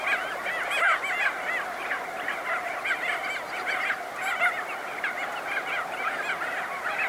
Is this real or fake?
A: real